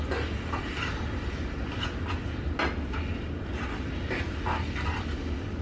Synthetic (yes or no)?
no